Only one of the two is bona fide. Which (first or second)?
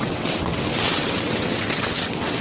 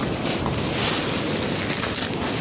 second